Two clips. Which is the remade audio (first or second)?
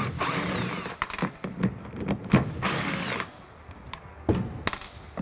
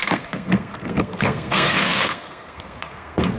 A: second